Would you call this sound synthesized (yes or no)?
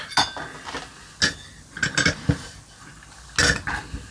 no